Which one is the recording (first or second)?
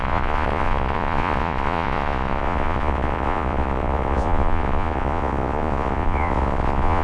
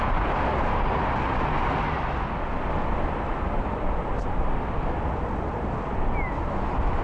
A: second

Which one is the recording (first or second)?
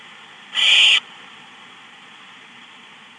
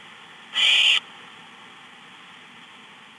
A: second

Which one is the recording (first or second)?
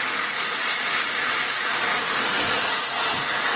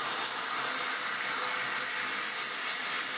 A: second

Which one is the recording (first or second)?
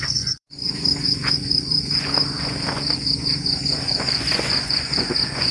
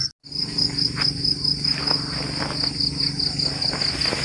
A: second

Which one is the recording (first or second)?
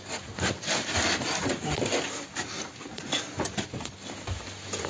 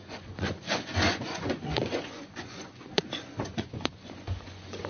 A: first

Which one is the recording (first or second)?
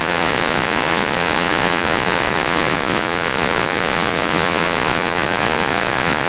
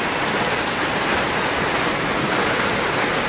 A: second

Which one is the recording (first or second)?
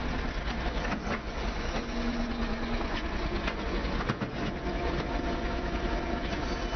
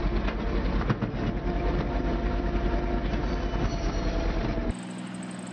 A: second